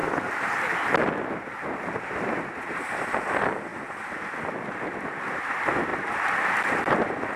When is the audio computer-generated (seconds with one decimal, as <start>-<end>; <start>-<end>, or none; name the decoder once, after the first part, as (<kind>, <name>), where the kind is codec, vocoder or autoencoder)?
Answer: 1.3-3.7 (vocoder, BigVGAN v2); 5.4-7.4